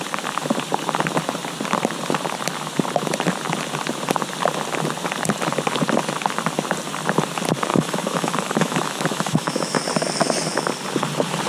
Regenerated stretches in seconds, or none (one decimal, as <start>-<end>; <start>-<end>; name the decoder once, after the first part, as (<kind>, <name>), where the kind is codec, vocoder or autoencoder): 7.7-9.8 (autoencoder, DAC-VAE)